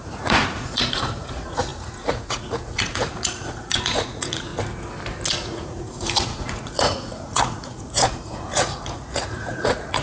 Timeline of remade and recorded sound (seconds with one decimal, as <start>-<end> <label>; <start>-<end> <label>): 0.0-4.5 remade; 4.5-5.4 recorded; 5.4-10.0 remade